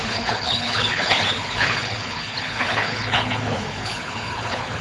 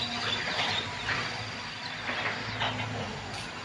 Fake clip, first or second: first